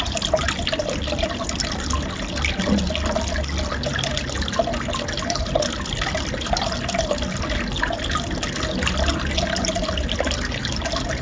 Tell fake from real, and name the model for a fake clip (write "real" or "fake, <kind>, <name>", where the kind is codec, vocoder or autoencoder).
real